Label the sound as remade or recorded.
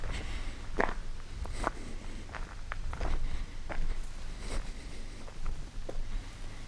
recorded